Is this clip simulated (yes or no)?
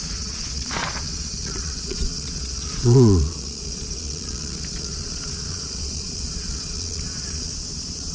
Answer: yes